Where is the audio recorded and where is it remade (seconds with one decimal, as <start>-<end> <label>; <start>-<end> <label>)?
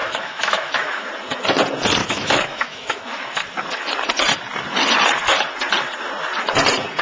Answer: 0.0-1.1 remade; 1.1-2.0 recorded; 2.0-3.0 remade; 3.0-7.0 recorded